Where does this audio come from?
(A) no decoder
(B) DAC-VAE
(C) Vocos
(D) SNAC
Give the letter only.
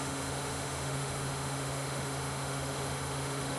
B